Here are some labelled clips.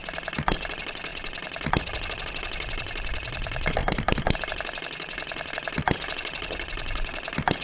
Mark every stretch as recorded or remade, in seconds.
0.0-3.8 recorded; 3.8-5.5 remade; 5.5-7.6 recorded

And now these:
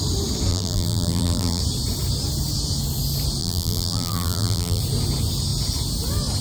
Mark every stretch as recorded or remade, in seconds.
0.0-0.5 recorded; 0.5-1.6 remade; 1.6-3.4 recorded; 3.4-4.8 remade; 4.8-6.4 recorded

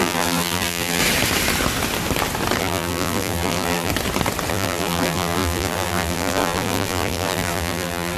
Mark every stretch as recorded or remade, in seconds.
0.0-1.0 remade; 1.0-2.6 recorded; 2.6-3.9 remade; 3.9-4.5 recorded; 4.5-8.2 remade

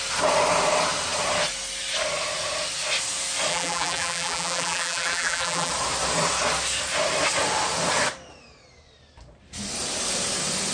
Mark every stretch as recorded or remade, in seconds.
0.0-3.5 recorded; 3.5-5.7 remade; 5.7-10.7 recorded